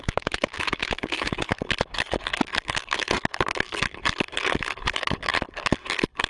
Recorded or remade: remade